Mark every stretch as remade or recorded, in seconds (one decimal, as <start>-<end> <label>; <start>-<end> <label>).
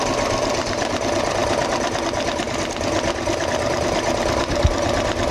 0.0-5.3 recorded